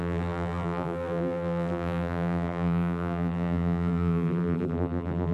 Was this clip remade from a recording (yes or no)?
yes